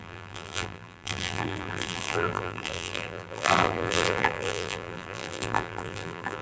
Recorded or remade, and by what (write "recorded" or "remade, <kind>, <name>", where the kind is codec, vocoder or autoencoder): remade, vocoder, BigVGAN v2